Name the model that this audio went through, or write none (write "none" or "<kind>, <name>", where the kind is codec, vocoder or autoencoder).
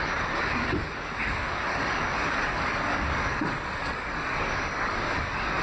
codec, DAC